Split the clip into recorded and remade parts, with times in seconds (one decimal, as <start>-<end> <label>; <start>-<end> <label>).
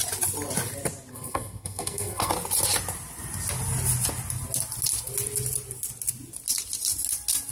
0.0-1.1 recorded; 1.1-2.3 remade; 2.3-7.5 recorded